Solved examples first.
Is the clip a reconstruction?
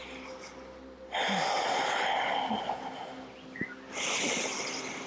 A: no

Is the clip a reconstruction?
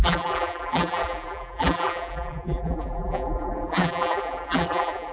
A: yes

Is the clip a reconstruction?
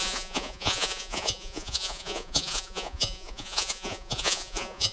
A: yes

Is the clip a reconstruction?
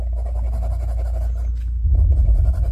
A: no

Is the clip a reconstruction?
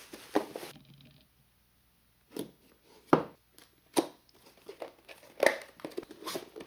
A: no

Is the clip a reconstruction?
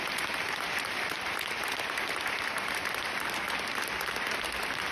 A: yes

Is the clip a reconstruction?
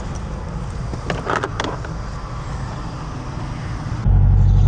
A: no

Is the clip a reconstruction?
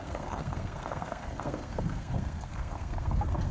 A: yes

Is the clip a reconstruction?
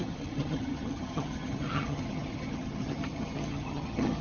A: yes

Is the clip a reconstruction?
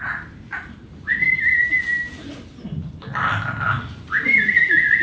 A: no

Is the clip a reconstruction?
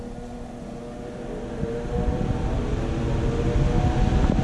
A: no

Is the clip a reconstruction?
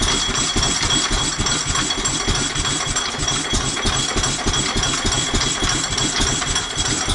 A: no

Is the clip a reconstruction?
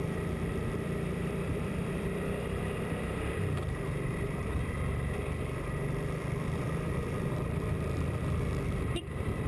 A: yes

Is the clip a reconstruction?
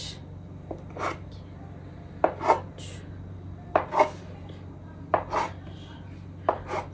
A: no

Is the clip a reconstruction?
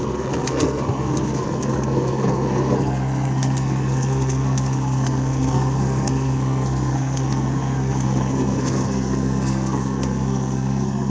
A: yes